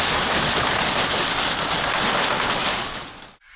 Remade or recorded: recorded